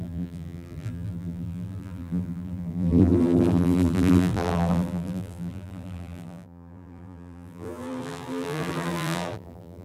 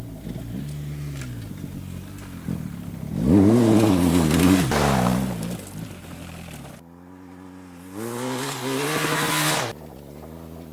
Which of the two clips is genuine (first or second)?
second